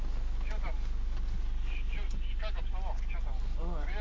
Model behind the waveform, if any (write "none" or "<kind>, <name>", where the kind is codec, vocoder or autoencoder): none